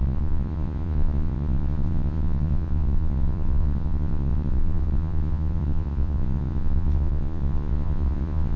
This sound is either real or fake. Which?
fake